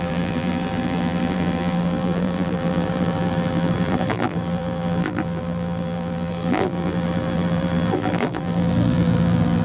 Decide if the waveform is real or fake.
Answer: fake